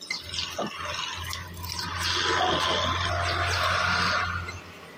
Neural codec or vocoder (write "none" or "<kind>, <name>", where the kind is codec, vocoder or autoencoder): none